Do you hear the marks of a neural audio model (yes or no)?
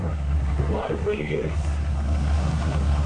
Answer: yes